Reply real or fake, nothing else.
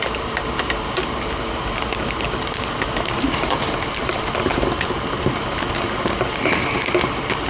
real